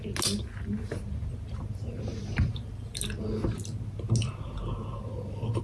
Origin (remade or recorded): recorded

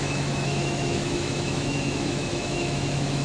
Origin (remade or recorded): remade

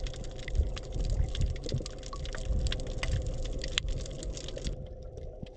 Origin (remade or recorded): recorded